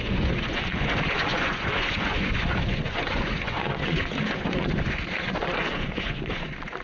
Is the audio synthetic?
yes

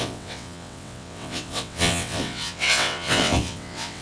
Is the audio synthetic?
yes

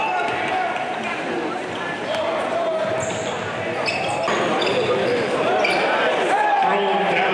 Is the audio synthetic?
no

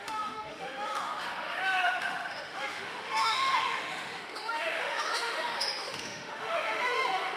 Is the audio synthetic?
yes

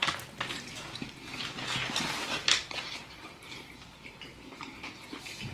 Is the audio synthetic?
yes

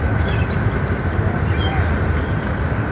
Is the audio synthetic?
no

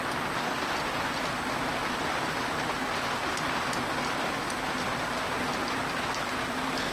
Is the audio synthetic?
no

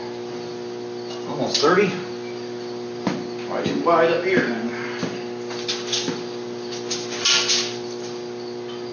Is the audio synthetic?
no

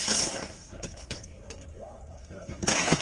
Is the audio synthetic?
yes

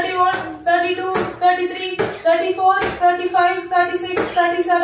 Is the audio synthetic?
no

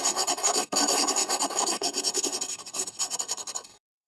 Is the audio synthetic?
yes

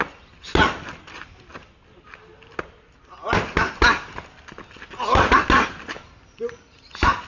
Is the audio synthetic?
no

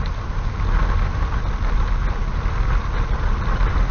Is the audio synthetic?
yes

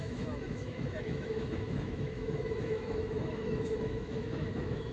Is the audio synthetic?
yes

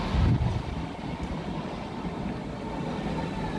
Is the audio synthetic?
no